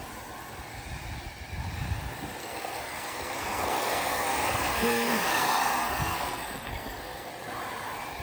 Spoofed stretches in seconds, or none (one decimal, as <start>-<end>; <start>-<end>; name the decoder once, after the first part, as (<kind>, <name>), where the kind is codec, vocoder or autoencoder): 2.4-7.3 (codec, SNAC)